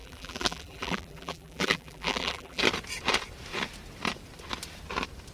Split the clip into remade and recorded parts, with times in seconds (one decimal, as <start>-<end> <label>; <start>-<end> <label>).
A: 0.0-2.6 remade; 2.6-5.3 recorded